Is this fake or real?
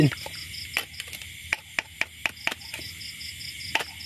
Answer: real